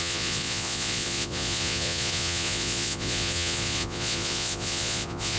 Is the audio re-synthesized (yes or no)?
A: yes